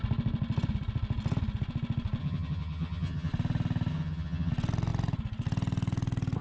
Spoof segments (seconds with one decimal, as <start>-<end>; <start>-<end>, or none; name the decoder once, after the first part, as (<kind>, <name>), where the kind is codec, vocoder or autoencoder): 2.2-3.3 (vocoder, HiFi-GAN); 3.9-4.5

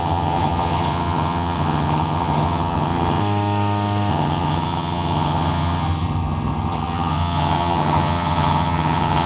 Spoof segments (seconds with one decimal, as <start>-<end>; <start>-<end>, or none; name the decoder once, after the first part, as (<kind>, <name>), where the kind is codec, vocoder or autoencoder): 0.0-3.2 (vocoder, HiFi-GAN); 4.1-9.3